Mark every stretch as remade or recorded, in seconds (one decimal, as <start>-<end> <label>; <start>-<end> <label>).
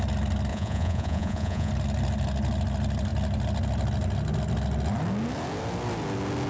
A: 0.0-0.5 recorded; 0.5-1.7 remade; 1.7-6.5 recorded